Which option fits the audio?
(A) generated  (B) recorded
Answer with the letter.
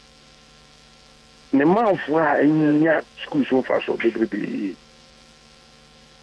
A